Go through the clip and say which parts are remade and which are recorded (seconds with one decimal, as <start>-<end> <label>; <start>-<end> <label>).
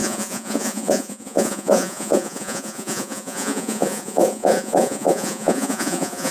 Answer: 0.0-6.3 remade